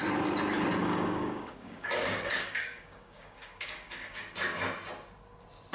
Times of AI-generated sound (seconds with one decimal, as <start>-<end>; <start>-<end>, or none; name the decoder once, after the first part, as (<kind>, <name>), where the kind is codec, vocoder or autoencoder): 0.8-4.2 (codec, DAC)